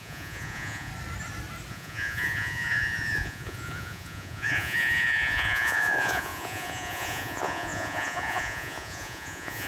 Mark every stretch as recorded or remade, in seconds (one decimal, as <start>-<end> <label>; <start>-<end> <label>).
0.0-0.9 remade; 0.9-1.7 recorded; 1.7-9.7 remade